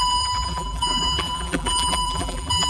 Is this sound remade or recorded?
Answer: remade